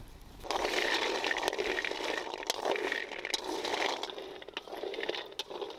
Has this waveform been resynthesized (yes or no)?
no